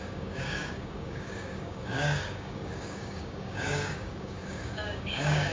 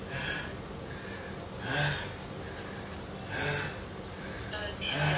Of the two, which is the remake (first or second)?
first